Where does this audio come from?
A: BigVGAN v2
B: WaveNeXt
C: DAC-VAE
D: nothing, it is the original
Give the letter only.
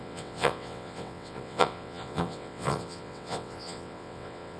B